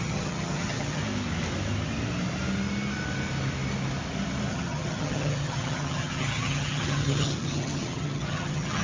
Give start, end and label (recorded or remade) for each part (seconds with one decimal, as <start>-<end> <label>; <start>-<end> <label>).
0.0-1.0 remade; 1.0-4.5 recorded; 4.5-8.8 remade